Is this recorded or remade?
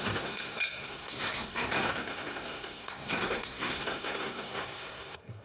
remade